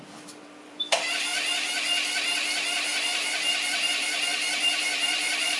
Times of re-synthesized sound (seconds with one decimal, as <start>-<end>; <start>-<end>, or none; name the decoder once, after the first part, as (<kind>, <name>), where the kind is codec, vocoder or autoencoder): 0.0-1.3 (vocoder, BigVGAN v2); 3.0-5.6